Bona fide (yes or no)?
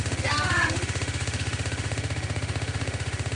no